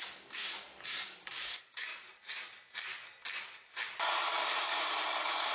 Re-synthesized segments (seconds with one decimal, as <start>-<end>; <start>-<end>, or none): 0.0-1.9